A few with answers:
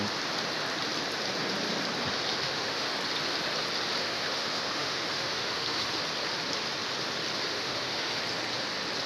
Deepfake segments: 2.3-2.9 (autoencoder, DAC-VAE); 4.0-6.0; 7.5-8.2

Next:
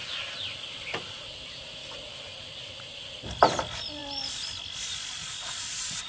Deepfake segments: none

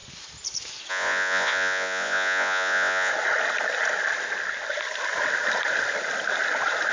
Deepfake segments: 0.9-3.1 (vocoder, Vocos)

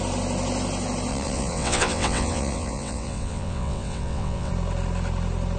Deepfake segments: 1.1-4.5 (vocoder, WaveNeXt)

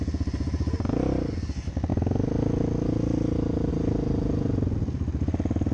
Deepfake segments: none

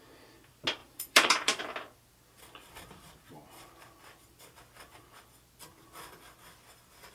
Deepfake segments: 0.8-1.6 (vocoder, BigVGAN v2)

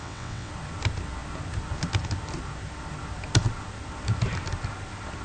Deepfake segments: 0.0-0.5 (vocoder, WaveNeXt)

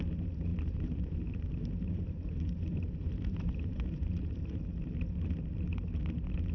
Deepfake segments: 0.5-4.4 (vocoder, BigVGAN v2)